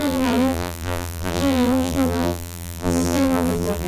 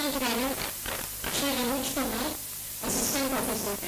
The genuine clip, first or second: second